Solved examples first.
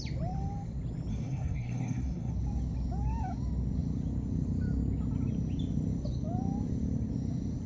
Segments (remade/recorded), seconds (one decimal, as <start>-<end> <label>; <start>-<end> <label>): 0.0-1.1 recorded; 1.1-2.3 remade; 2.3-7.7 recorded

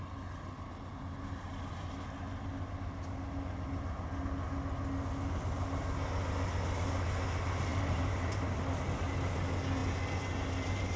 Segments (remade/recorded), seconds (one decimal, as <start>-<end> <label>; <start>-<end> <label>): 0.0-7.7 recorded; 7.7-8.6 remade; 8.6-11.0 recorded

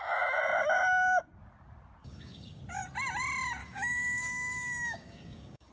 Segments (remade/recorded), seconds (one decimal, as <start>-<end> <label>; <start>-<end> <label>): 0.0-2.0 recorded; 2.0-2.6 remade; 2.6-3.6 recorded; 3.6-5.7 remade